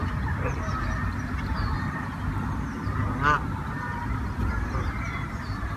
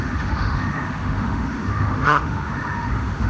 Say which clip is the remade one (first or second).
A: second